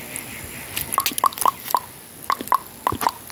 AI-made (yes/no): no